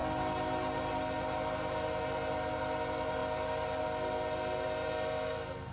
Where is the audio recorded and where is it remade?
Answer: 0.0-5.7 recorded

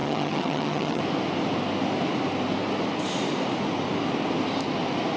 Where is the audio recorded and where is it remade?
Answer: 0.0-1.0 remade; 1.0-5.2 recorded

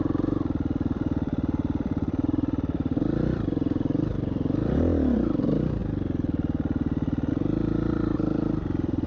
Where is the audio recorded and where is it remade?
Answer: 0.0-5.8 remade; 5.8-7.3 recorded; 7.3-9.1 remade

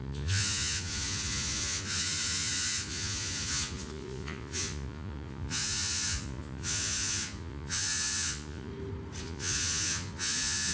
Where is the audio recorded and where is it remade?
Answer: 0.0-8.7 remade; 8.7-9.2 recorded; 9.2-10.7 remade

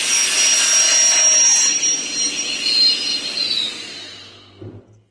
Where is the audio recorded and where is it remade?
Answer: 0.0-5.1 recorded

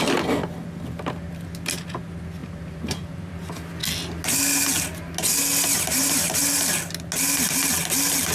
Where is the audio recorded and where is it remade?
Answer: 0.0-2.4 recorded; 2.4-3.3 remade; 3.3-5.7 recorded; 5.7-6.4 remade; 6.4-8.3 recorded